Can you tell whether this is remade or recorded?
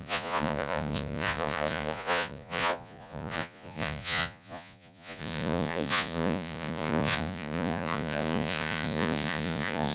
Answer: remade